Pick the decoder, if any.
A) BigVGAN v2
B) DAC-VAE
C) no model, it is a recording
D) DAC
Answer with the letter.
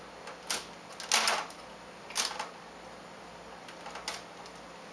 C